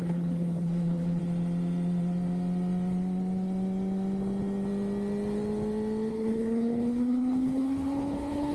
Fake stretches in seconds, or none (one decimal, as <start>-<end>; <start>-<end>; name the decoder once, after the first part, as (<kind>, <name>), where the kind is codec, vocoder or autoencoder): 0.0-1.2 (codec, HILCodec); 6.1-8.5